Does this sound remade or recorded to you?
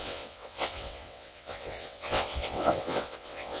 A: remade